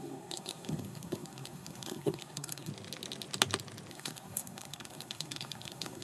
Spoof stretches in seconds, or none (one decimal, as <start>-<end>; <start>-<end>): 0.0-2.7; 3.9-6.0